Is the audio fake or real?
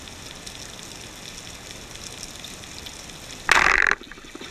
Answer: real